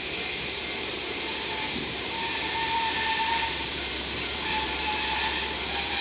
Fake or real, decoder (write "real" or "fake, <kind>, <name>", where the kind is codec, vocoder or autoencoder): fake, vocoder, BigVGAN v2